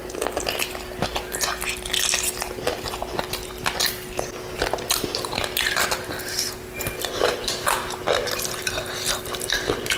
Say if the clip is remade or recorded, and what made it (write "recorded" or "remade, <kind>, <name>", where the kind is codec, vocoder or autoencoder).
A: recorded